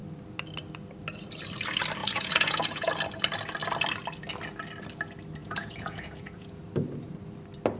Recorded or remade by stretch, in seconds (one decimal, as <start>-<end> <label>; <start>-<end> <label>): 0.0-2.0 recorded; 2.0-2.9 remade; 2.9-5.4 recorded; 5.4-6.6 remade; 6.6-7.8 recorded